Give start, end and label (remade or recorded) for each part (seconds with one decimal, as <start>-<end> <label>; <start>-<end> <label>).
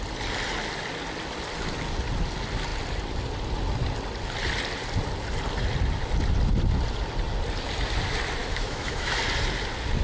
0.0-8.4 recorded; 8.4-9.2 remade; 9.2-10.0 recorded